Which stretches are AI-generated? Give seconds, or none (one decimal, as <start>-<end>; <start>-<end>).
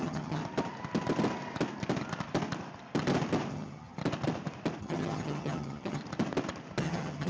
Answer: 0.0-0.4; 3.5-4.0; 4.8-6.0; 6.8-7.3